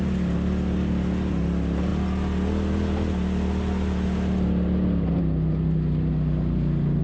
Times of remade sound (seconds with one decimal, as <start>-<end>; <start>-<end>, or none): none